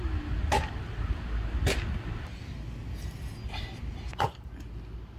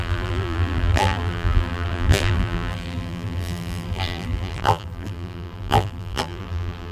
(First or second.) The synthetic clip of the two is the second